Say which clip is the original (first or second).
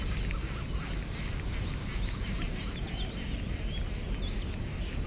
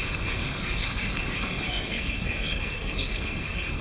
first